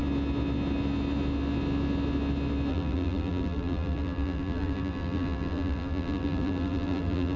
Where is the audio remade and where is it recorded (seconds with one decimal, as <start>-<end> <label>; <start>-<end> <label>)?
0.0-2.7 recorded; 2.7-7.4 remade